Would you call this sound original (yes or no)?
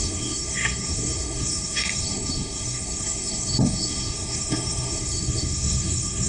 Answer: no